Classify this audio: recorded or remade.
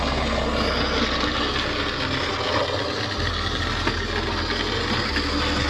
recorded